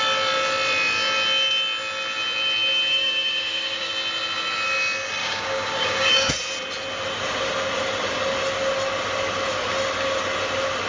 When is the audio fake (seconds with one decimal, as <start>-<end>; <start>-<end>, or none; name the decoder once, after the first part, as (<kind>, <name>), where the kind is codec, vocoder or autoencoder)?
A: 2.9-3.9 (codec, DAC); 5.2-6.3